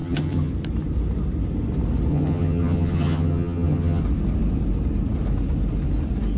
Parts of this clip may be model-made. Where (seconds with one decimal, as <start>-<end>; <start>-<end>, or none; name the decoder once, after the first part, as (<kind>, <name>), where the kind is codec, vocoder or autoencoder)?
0.0-0.5 (vocoder, HiFi-GAN); 2.1-4.0